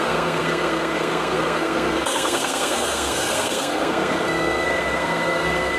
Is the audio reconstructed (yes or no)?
yes